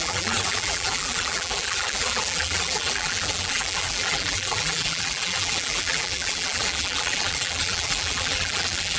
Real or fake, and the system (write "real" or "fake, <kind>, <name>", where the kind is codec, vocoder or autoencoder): fake, vocoder, BigVGAN v2